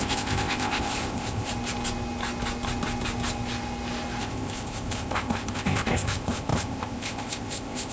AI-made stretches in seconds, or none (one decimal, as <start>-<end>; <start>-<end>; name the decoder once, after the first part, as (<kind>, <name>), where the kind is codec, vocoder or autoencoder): 0.0-1.5 (codec, ZipCodec); 4.2-7.9